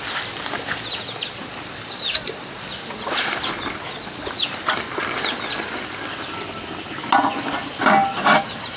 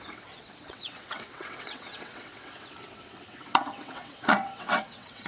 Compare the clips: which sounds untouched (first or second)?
first